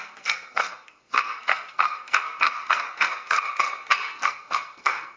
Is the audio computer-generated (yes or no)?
yes